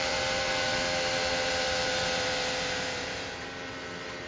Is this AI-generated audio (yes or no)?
yes